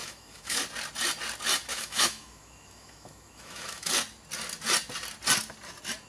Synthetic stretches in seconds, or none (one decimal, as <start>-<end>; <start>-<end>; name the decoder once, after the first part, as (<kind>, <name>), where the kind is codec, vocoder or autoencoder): 0.0-0.6 (autoencoder, DAC-VAE); 1.7-3.9